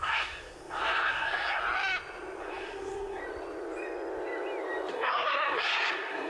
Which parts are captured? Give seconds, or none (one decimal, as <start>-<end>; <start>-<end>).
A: 1.6-2.4; 3.2-4.9